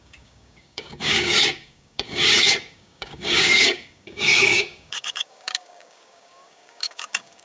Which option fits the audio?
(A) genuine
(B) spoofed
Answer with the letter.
B